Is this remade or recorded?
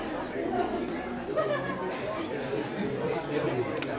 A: recorded